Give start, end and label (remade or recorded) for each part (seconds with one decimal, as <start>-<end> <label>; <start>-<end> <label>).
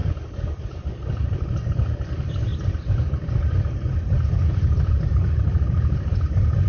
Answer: 0.0-6.7 recorded